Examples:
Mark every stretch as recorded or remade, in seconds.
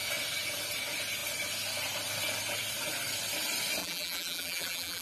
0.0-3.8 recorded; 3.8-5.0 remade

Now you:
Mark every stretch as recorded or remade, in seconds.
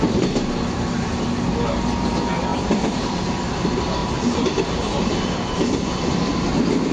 0.0-2.5 recorded; 2.5-3.3 remade; 3.3-4.0 recorded; 4.0-6.1 remade; 6.1-6.9 recorded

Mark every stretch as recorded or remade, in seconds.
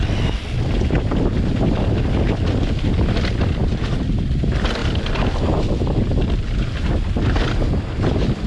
0.0-8.5 recorded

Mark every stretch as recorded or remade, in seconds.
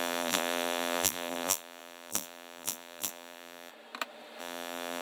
0.0-3.7 remade; 3.7-4.4 recorded; 4.4-5.0 remade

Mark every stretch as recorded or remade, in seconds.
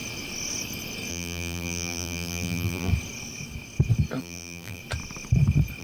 0.0-1.1 recorded; 1.1-2.9 remade; 2.9-4.2 recorded; 4.2-4.8 remade; 4.8-5.8 recorded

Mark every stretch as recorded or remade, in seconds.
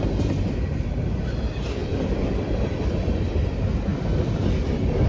0.0-1.8 recorded; 1.8-2.5 remade; 2.5-3.9 recorded; 3.9-5.1 remade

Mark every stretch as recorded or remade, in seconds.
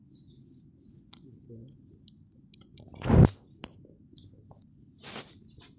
0.0-5.8 recorded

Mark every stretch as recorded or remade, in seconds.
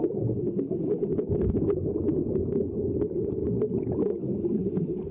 0.0-5.1 recorded